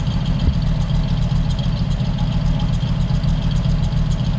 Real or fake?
real